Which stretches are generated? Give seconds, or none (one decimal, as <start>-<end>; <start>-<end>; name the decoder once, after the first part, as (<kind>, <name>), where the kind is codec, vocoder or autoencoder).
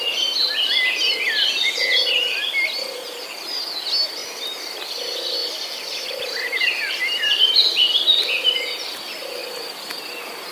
4.2-4.8 (vocoder, BigVGAN v2); 5.4-7.0